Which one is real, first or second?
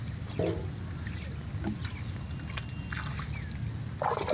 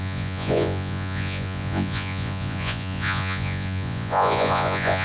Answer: first